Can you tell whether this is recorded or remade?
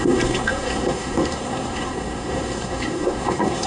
remade